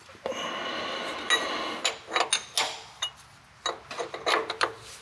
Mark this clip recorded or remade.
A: recorded